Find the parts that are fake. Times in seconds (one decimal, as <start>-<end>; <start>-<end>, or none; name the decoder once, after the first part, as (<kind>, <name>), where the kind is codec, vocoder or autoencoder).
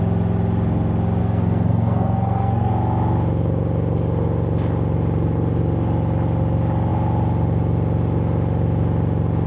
1.2-2.7 (codec, SNAC)